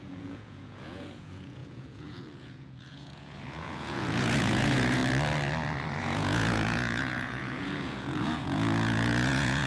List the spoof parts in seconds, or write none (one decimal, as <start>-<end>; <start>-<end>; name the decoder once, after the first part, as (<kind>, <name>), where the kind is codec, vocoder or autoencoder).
0.0-5.0 (vocoder, Vocos); 6.0-9.7